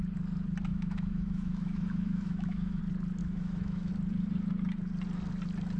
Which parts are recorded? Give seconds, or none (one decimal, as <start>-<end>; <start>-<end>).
0.0-0.7; 2.8-3.2; 3.9-5.8